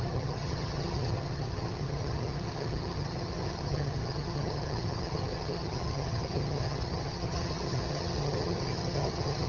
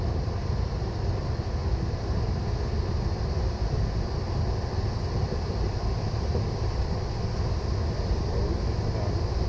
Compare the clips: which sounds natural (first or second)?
second